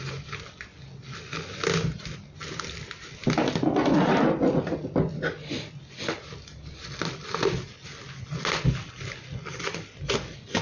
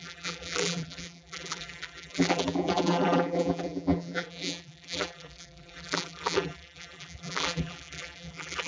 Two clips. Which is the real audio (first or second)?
first